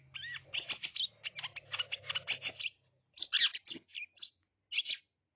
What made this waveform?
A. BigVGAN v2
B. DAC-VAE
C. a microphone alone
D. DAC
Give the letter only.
C